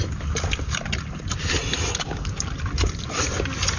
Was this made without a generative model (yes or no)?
yes